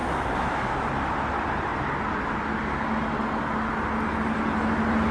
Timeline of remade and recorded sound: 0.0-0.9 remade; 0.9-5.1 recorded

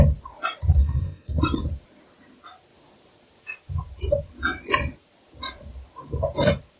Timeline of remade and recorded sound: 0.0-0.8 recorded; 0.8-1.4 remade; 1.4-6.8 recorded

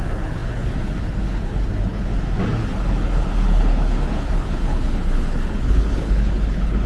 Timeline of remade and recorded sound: 0.0-2.1 remade; 2.1-2.6 recorded; 2.6-6.9 remade

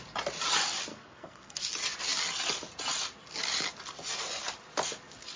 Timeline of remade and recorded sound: 0.0-0.9 recorded; 0.9-1.7 remade; 1.7-5.4 recorded